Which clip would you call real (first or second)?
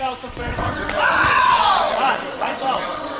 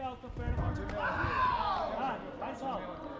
second